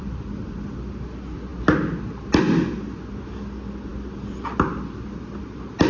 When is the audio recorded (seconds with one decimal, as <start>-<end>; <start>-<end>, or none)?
0.0-5.9